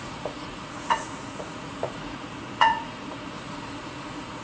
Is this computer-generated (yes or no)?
yes